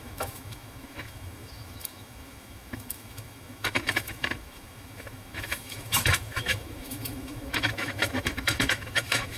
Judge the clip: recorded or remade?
remade